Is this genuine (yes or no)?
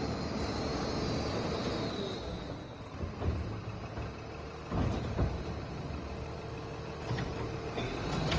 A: yes